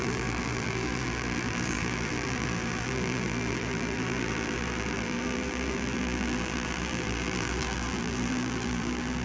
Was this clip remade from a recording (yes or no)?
yes